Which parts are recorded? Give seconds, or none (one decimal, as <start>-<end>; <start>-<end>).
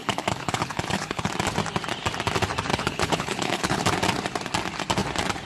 1.3-2.7; 3.8-5.5